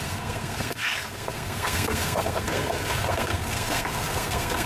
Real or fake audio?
fake